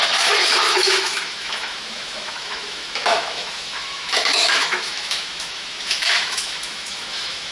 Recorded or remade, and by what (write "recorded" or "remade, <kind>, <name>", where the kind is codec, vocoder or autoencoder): remade, autoencoder, DAC-VAE